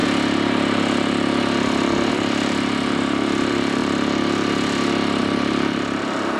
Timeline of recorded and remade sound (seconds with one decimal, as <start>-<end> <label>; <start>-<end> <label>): 0.0-2.1 recorded; 2.1-3.8 remade; 3.8-5.2 recorded; 5.2-6.4 remade